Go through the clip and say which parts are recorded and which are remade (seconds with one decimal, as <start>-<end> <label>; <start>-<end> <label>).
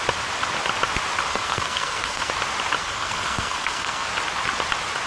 0.0-1.3 recorded; 1.3-2.3 remade; 2.3-2.8 recorded; 2.8-4.1 remade; 4.1-5.1 recorded